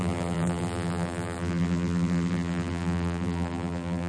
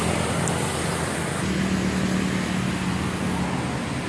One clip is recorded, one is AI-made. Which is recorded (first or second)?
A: second